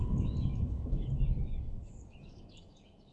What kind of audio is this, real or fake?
fake